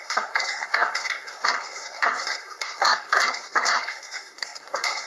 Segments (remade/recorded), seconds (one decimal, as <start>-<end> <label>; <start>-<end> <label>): 0.0-5.1 remade